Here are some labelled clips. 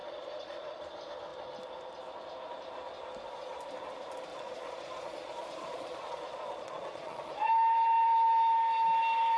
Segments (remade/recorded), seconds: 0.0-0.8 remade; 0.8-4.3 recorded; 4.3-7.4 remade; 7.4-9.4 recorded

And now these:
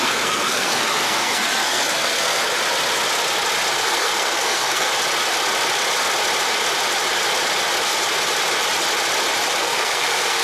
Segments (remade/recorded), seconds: 0.0-2.4 remade; 2.4-3.7 recorded; 3.7-4.9 remade; 4.9-9.6 recorded; 9.6-10.4 remade

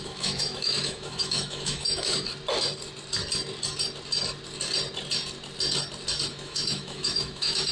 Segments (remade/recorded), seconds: 0.0-2.3 remade; 2.3-6.3 recorded; 6.3-7.7 remade

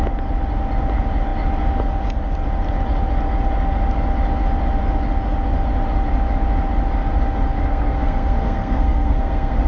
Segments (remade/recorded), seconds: 0.0-7.7 recorded; 7.7-9.7 remade

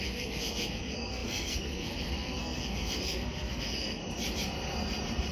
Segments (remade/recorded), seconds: 0.0-4.0 remade; 4.0-5.3 recorded

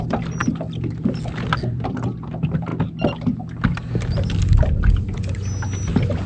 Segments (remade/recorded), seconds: 0.0-6.3 recorded

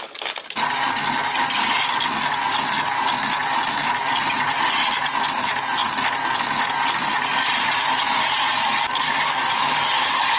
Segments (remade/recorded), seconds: 0.0-10.4 recorded

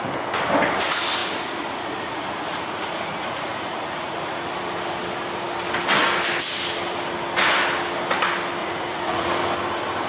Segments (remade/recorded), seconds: 0.0-1.2 recorded; 1.2-4.5 remade; 4.5-8.6 recorded; 8.6-9.3 remade; 9.3-10.1 recorded